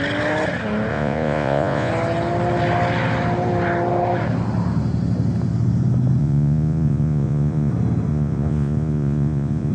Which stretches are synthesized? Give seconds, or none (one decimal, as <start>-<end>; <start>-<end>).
0.9-1.9; 6.2-7.7; 8.1-9.7